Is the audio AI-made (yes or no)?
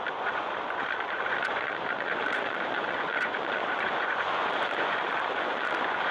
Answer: yes